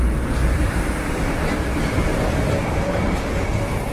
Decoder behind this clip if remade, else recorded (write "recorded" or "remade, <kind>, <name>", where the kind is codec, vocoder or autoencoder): remade, vocoder, BigVGAN v2